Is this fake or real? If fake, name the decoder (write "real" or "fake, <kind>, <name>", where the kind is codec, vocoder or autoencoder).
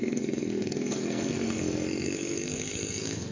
fake, codec, SNAC